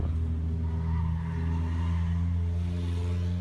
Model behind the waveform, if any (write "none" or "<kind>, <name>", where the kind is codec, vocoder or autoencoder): none